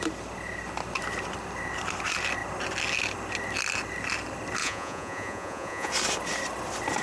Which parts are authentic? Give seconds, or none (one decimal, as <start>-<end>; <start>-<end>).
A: 0.0-4.6; 5.9-7.0